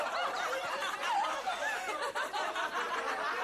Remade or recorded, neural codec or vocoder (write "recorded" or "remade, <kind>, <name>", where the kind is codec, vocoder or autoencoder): recorded